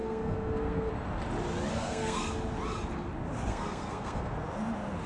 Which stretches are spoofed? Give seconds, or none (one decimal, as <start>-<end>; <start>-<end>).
0.0-0.9; 1.7-2.3; 3.5-4.3